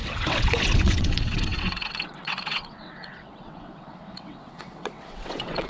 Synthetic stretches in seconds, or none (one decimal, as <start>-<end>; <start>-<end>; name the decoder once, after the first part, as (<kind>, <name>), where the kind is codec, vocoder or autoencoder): 0.0-5.7 (vocoder, WaveNeXt)